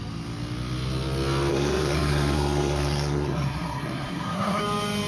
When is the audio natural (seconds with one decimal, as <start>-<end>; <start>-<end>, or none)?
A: 0.0-1.5; 4.6-5.1